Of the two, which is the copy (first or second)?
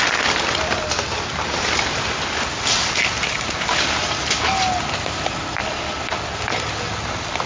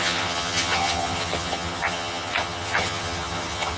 second